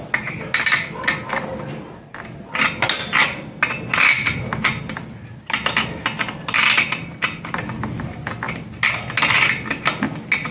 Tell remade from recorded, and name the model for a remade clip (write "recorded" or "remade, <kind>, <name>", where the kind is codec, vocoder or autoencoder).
recorded